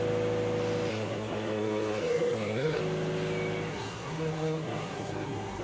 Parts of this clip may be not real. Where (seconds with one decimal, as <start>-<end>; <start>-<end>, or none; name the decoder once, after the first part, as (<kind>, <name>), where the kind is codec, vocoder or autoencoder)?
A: 0.9-2.8 (codec, SNAC); 3.7-5.6